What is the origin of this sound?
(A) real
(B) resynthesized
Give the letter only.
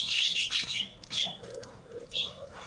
B